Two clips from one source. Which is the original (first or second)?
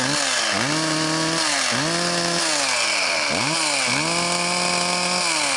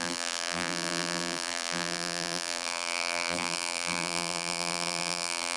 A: first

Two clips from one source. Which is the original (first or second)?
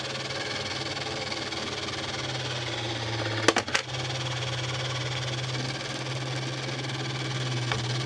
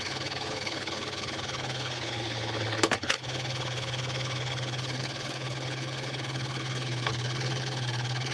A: first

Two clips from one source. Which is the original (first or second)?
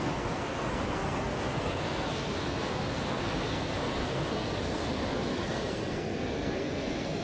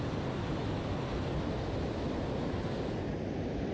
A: second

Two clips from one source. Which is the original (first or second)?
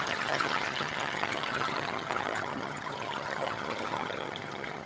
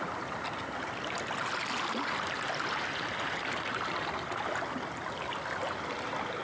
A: second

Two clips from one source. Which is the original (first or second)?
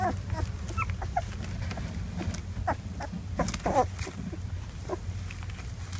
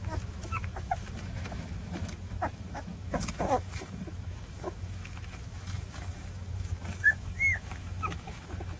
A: first